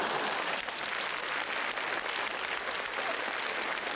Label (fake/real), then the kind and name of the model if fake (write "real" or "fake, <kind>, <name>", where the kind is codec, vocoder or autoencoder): real